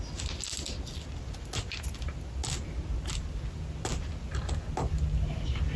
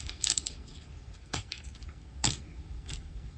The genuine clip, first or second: first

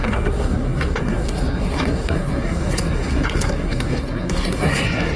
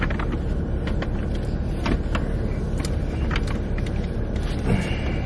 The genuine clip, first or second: second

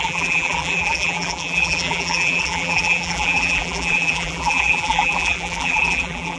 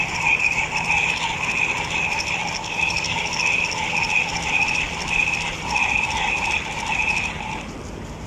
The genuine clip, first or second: second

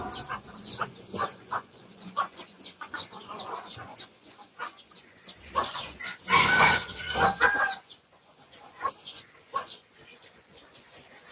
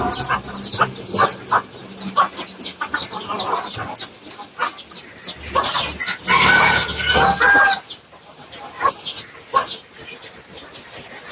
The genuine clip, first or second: second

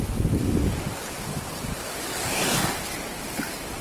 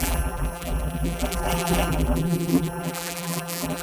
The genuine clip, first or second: first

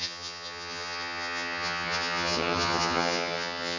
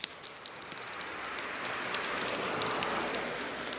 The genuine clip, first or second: second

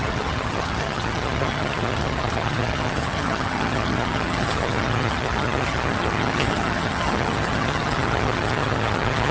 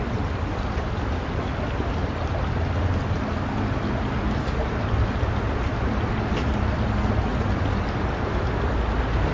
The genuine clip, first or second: second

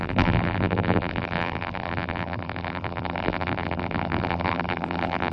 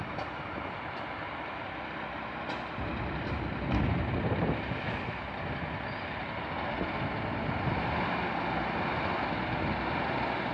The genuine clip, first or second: second